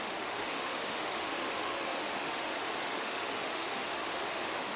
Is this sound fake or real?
fake